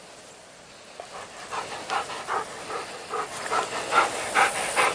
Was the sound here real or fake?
real